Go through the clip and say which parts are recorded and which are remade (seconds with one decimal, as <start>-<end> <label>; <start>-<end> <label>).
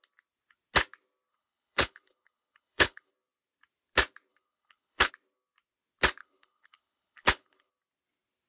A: 0.0-1.3 recorded; 1.3-3.1 remade; 3.1-4.3 recorded; 4.3-5.1 remade; 5.1-6.2 recorded; 6.2-7.7 remade; 7.7-8.5 recorded